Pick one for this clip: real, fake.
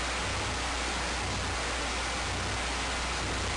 real